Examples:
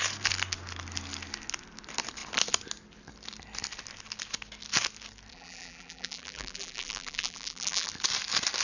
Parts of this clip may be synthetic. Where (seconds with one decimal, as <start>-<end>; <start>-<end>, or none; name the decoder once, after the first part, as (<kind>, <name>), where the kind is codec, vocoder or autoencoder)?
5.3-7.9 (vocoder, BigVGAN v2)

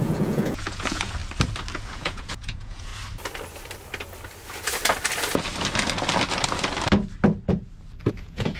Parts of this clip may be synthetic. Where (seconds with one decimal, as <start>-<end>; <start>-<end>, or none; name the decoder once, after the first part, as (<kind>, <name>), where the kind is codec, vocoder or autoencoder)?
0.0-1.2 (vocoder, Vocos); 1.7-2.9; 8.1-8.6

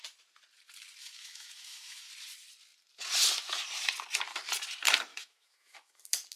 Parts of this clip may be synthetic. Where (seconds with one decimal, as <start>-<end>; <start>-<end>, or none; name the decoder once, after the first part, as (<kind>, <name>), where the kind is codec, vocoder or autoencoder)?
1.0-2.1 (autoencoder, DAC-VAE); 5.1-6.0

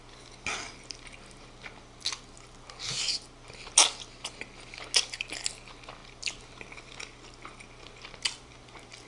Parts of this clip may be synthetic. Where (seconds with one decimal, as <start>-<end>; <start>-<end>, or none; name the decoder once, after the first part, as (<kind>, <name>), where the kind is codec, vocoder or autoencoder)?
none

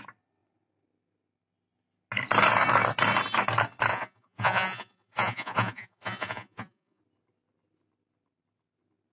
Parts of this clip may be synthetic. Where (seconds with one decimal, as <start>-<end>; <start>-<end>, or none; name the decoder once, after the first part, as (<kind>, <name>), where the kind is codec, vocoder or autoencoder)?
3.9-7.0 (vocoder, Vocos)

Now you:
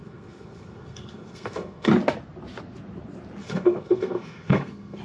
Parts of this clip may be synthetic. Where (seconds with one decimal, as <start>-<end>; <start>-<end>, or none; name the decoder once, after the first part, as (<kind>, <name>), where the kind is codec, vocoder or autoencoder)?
0.0-1.9 (codec, SNAC); 3.4-5.0